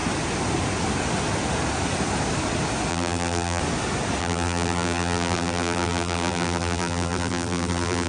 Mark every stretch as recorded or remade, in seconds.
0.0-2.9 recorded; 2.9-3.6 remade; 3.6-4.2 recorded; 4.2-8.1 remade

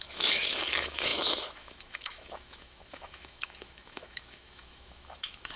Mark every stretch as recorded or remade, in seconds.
0.0-5.6 remade